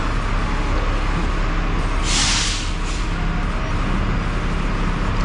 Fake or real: real